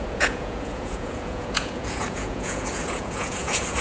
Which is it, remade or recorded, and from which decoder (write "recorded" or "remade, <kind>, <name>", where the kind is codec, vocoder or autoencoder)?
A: remade, vocoder, Vocos